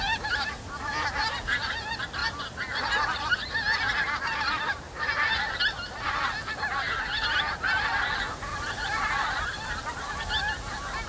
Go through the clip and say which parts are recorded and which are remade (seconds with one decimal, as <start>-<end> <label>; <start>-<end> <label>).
0.0-8.5 recorded; 8.5-10.2 remade; 10.2-11.1 recorded